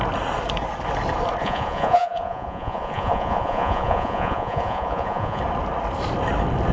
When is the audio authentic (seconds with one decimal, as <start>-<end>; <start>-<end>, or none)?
0.0-1.4; 5.4-6.7